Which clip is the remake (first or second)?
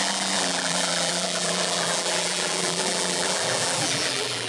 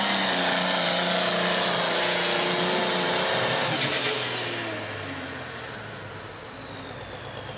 first